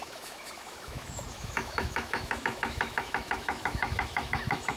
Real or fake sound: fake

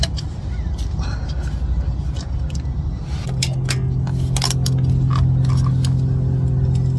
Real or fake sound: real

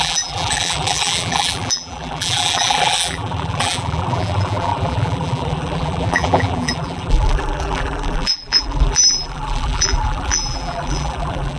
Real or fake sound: fake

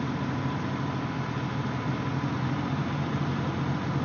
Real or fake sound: real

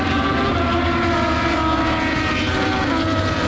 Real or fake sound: real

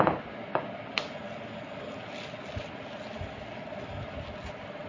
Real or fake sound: real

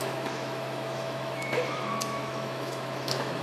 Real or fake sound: fake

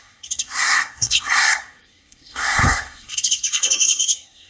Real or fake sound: fake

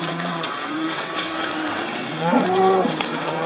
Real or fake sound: fake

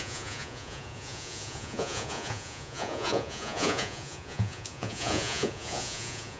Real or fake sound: fake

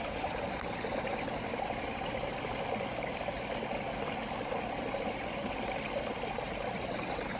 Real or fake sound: real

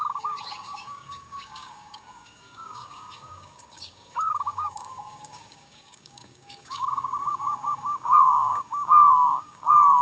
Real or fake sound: fake